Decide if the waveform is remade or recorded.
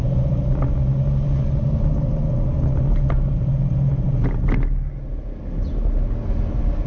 recorded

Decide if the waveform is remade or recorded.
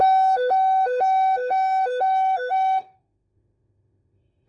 remade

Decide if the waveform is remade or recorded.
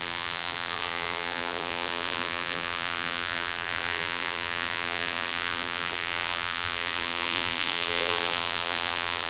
remade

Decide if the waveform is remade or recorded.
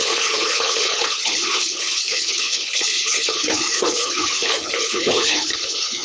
remade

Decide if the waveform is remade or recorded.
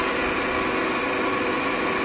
recorded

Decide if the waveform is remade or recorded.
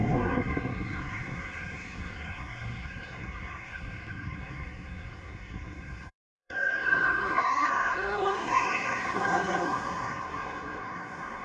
remade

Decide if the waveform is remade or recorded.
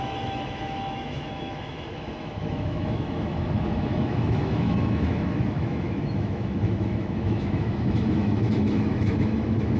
remade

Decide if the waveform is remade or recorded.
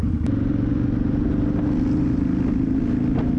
recorded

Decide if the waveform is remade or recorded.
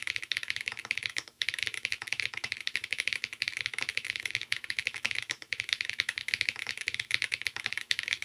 remade